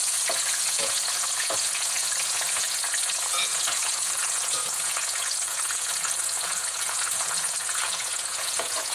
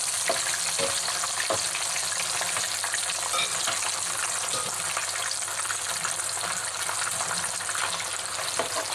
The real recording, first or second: second